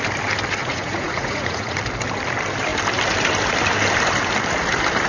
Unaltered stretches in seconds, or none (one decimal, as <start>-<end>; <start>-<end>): 0.0-0.6; 1.8-5.1